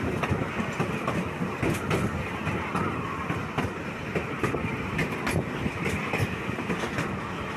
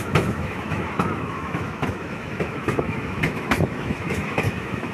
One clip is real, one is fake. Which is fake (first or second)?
second